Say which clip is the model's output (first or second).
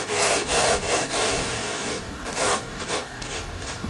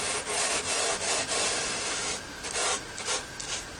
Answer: first